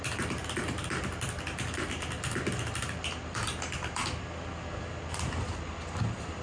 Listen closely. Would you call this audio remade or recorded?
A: recorded